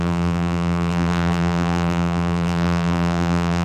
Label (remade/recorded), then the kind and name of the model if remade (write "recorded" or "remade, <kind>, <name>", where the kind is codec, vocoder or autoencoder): remade, vocoder, BigVGAN v2